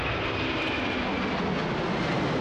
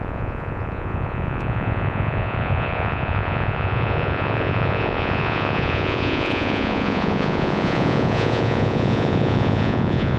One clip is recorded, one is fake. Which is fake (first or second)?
second